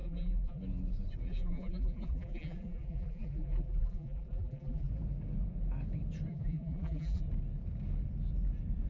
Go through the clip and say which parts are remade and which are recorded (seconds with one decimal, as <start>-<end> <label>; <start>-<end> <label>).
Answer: 0.0-0.6 remade; 0.6-1.3 recorded; 1.3-4.9 remade; 4.9-6.3 recorded; 6.3-7.2 remade; 7.2-8.9 recorded